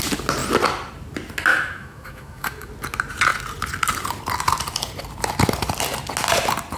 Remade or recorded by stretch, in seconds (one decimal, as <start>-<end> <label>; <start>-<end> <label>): 0.0-1.5 recorded; 1.5-2.7 remade; 2.7-6.8 recorded